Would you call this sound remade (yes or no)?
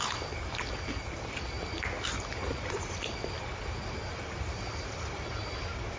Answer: yes